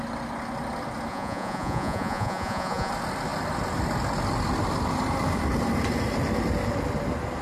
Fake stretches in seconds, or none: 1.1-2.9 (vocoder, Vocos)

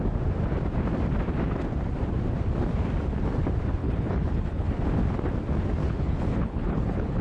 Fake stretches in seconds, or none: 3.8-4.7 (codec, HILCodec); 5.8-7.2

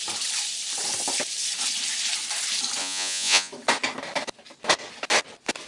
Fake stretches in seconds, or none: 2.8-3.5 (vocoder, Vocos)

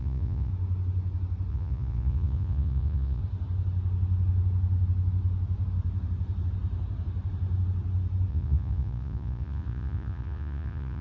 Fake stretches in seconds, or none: 0.0-0.5 (vocoder, Vocos); 1.5-3.2; 8.3-11.0